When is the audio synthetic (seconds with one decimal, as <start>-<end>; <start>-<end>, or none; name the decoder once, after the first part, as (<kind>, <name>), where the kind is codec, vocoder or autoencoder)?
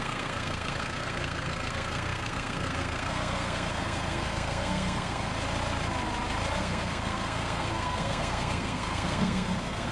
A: 0.0-5.3 (codec, SNAC); 6.6-9.9